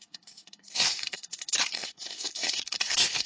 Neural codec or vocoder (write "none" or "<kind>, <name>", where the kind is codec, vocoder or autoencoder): codec, SNAC